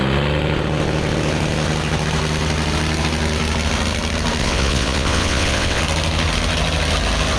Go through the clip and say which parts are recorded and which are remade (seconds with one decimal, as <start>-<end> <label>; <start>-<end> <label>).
0.0-4.4 recorded; 4.4-5.8 remade; 5.8-7.4 recorded